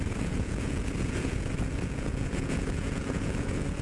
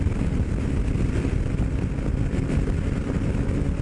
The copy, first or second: first